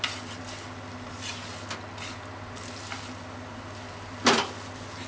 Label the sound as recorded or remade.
recorded